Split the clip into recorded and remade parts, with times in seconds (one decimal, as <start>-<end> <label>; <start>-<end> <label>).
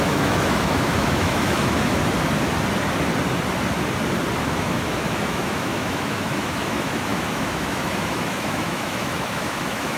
0.0-2.0 remade; 2.0-4.4 recorded; 4.4-10.0 remade